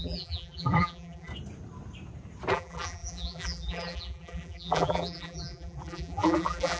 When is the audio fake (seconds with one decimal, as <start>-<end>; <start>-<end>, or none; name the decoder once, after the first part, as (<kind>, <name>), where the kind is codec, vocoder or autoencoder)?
0.0-1.3 (vocoder, BigVGAN v2); 2.5-6.8